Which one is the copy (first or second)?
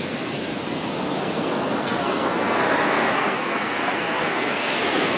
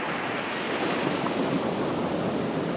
first